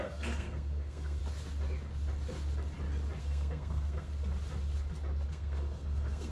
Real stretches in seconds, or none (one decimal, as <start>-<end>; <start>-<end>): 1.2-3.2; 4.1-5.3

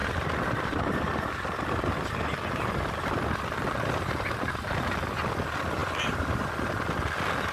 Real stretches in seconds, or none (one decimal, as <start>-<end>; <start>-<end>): 4.5-5.8; 6.4-7.5

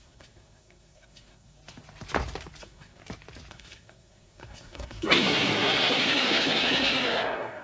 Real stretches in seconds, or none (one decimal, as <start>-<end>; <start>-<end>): 1.6-2.6; 3.0-3.5

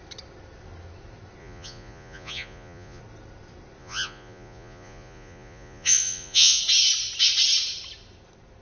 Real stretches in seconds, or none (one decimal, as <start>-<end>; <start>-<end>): 0.0-1.4; 3.0-3.8; 6.6-8.6

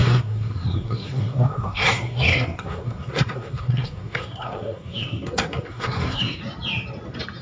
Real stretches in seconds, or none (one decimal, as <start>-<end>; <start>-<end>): 6.4-7.4

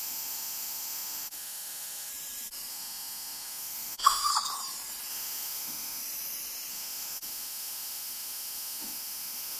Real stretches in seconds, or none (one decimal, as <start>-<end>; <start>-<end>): 2.1-2.7; 4.3-5.1; 6.0-6.7